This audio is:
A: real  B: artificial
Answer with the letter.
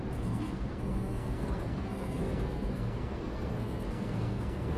B